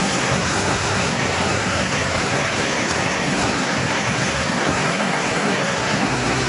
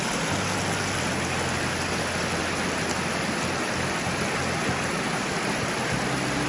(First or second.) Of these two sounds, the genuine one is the second